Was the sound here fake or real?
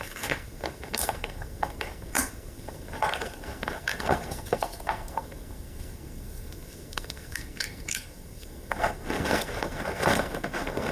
fake